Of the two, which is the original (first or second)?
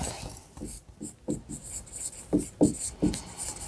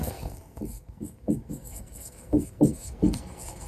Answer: first